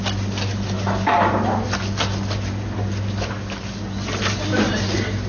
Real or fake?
real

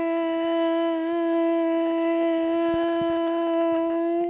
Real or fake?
real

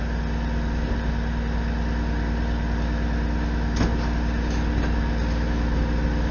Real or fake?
real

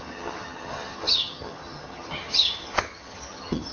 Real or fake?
fake